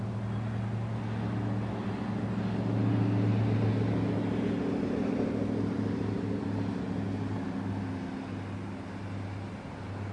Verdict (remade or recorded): recorded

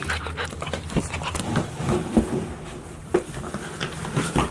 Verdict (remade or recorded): recorded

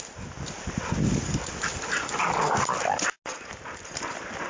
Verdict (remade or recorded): recorded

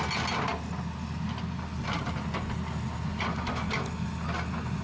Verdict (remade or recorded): recorded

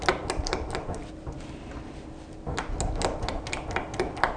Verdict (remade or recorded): recorded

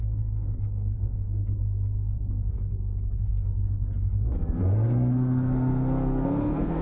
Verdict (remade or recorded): remade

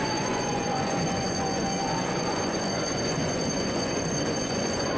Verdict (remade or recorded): remade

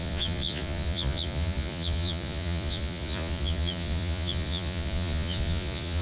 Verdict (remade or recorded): remade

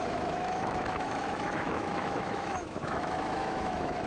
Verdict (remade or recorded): remade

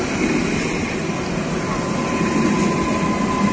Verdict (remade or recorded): recorded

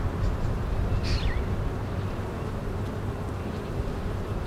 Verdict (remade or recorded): recorded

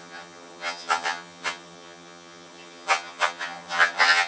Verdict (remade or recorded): remade